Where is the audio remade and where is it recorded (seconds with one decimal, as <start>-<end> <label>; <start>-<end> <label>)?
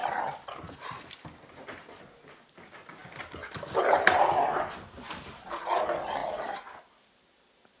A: 0.0-3.0 recorded; 3.0-4.3 remade; 4.3-6.2 recorded; 6.2-7.0 remade; 7.0-7.8 recorded